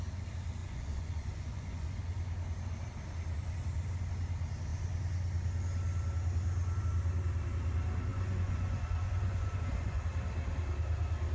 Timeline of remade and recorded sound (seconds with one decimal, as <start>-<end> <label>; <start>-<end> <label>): 0.0-0.6 recorded; 0.6-2.0 remade; 2.0-8.1 recorded; 8.1-10.0 remade; 10.0-11.3 recorded